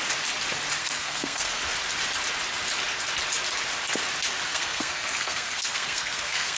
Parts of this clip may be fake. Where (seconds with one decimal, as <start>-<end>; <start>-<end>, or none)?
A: 0.8-1.6; 4.5-6.6

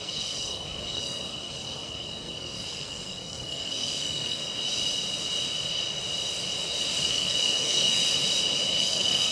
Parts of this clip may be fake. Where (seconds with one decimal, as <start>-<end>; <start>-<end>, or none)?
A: 0.0-4.4; 7.1-8.0; 8.8-9.3

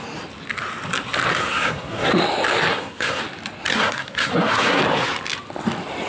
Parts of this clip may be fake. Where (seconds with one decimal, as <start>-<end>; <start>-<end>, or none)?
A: 1.4-2.1; 2.7-3.2; 3.7-4.8

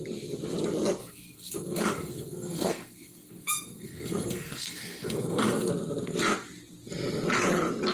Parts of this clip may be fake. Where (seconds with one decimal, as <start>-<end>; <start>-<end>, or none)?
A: 1.0-5.7

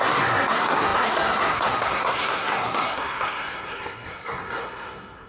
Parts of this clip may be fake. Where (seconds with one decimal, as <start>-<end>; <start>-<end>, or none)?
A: 0.0-5.3

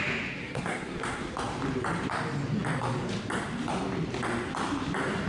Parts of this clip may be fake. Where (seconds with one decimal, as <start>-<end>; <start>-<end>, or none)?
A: 0.4-1.3